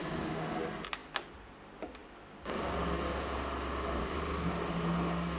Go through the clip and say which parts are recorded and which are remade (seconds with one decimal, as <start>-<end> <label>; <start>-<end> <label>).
0.0-5.4 recorded